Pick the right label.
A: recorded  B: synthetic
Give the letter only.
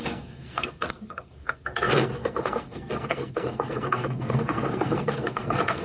B